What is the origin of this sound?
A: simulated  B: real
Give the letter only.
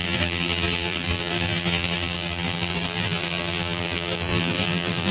A